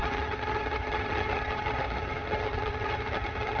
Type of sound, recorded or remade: remade